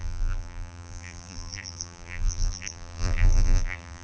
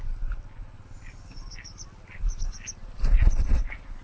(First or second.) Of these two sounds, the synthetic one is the first